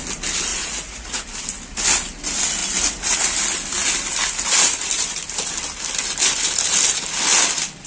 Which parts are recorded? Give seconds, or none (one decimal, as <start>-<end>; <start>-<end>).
0.0-0.5; 1.2-7.9